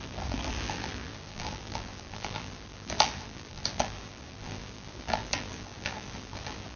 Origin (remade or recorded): remade